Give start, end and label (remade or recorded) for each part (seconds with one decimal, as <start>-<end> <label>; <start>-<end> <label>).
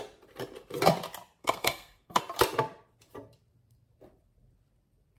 0.0-1.4 recorded; 1.4-2.2 remade; 2.2-5.2 recorded